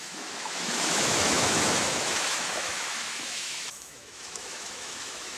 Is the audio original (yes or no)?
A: no